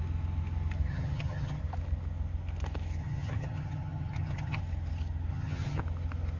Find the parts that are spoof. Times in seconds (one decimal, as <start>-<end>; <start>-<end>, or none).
0.9-1.6; 3.0-4.6; 5.3-5.8